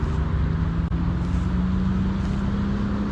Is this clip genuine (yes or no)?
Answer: yes